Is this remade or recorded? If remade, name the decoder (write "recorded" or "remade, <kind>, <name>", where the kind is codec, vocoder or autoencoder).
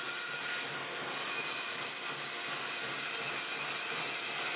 remade, vocoder, BigVGAN v2